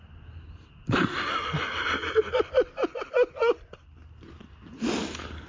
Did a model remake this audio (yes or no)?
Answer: no